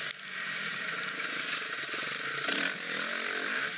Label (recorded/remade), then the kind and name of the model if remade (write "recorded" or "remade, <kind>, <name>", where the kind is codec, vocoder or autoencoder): recorded